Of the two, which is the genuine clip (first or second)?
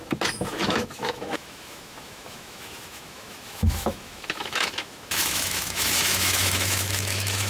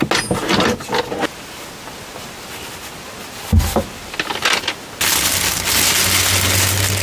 second